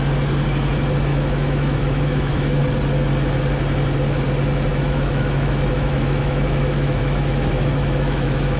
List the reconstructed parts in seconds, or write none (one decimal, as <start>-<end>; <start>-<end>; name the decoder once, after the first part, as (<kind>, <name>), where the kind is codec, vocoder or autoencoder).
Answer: 1.1-2.6 (autoencoder, DAC-VAE); 4.7-8.6